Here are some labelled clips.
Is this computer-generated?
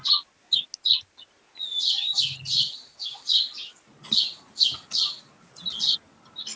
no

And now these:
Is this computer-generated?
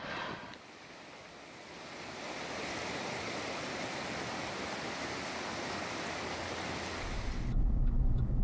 no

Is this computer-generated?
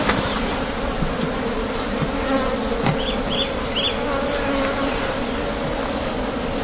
no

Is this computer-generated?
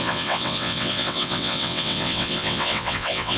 yes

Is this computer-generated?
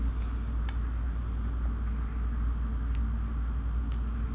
no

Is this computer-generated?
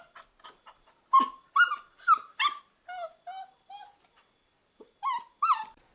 no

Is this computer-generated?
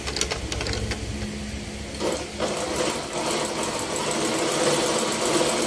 no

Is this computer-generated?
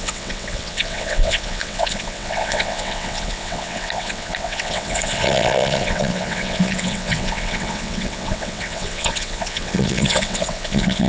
yes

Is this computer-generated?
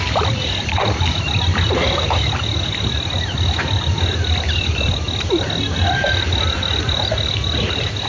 no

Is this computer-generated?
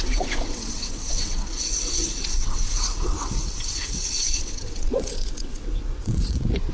yes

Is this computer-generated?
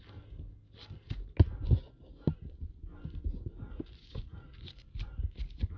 no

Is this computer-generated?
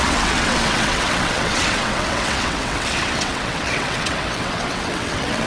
yes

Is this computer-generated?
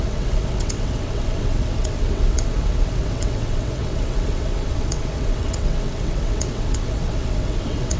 yes